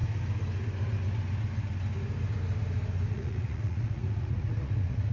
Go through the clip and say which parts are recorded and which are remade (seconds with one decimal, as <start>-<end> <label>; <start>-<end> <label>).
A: 0.0-3.1 recorded; 3.1-5.1 remade